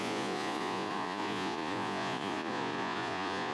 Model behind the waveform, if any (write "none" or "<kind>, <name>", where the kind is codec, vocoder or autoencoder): vocoder, Vocos